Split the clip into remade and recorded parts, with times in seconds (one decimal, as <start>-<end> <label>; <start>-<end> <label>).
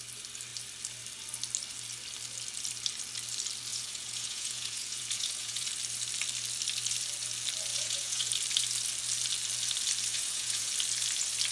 0.0-3.7 recorded; 3.7-5.7 remade; 5.7-7.7 recorded; 7.7-8.3 remade; 8.3-10.1 recorded; 10.1-10.7 remade; 10.7-11.5 recorded